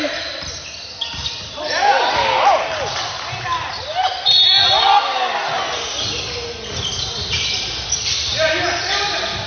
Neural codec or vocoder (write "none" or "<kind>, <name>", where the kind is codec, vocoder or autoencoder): none